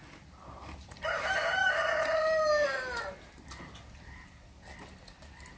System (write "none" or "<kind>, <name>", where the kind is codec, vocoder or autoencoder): none